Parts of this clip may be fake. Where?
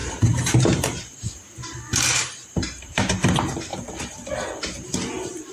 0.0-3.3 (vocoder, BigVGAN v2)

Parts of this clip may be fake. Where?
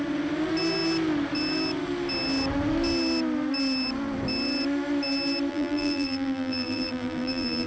5.5-7.7 (vocoder, BigVGAN v2)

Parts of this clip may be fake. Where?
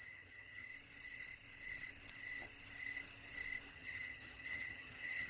0.0-0.7 (vocoder, HiFi-GAN); 3.7-5.3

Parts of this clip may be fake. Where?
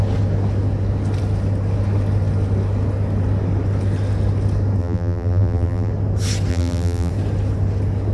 4.8-5.9 (vocoder, BigVGAN v2); 6.5-7.1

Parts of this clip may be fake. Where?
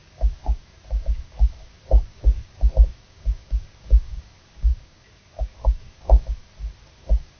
0.0-6.4 (codec, DAC); 7.0-7.4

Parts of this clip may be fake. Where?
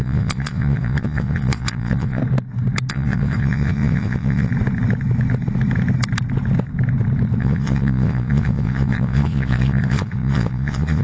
0.0-2.2 (vocoder, Vocos); 2.9-4.5; 7.4-11.0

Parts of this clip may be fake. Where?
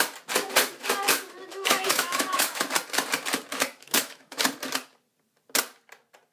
1.5-2.6 (autoencoder, DAC-VAE); 3.5-4.4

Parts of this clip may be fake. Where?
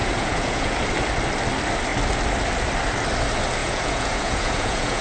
0.0-0.8 (vocoder, Vocos); 3.6-5.0